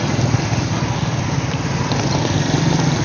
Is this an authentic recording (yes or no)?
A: yes